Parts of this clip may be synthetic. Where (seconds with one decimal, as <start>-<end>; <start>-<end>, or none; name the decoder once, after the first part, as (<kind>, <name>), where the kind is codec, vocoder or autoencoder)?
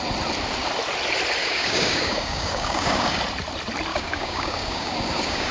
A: 1.4-3.2 (codec, DAC); 3.9-5.5